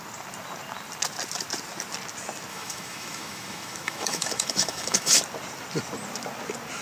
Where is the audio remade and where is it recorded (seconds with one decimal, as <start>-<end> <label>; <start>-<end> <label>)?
0.0-2.5 recorded; 2.5-5.2 remade; 5.2-6.8 recorded